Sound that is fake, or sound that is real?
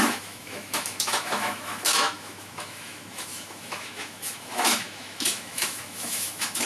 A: fake